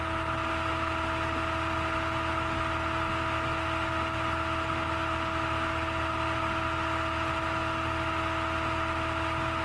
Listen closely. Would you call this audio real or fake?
real